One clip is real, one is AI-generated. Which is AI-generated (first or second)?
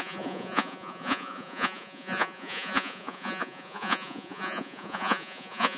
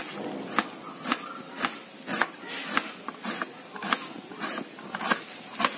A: first